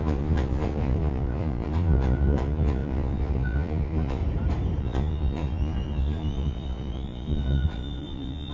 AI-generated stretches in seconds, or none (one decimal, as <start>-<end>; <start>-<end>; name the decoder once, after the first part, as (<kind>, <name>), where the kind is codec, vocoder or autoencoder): 0.0-4.2 (vocoder, Vocos); 4.8-8.5